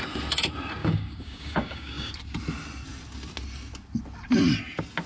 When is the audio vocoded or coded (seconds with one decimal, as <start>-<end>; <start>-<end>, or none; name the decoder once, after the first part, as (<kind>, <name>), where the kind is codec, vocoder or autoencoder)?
0.8-2.1 (codec, DAC)